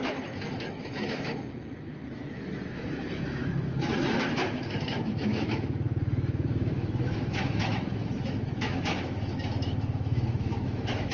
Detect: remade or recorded remade